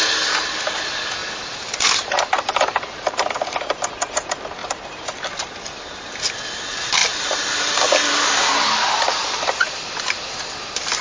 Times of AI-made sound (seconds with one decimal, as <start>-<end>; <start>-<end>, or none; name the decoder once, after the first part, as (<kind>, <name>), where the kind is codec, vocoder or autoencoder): 1.2-3.9 (vocoder, BigVGAN v2)